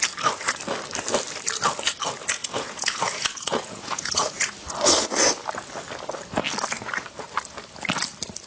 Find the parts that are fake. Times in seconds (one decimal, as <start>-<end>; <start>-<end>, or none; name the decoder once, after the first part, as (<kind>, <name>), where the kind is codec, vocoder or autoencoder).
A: 2.4-4.5 (vocoder, Vocos)